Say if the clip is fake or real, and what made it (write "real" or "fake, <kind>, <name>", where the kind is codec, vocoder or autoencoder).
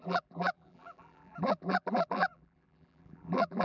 fake, vocoder, BigVGAN v2